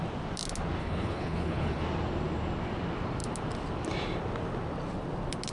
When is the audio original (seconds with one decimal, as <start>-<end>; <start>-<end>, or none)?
0.0-0.8; 1.8-5.5